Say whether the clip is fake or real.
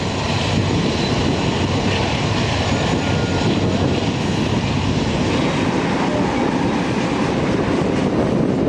real